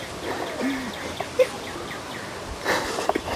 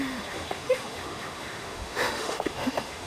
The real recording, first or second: first